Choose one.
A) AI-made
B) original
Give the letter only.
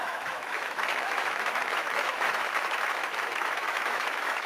A